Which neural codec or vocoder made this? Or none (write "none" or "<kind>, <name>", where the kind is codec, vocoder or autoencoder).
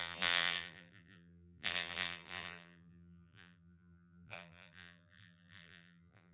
vocoder, BigVGAN v2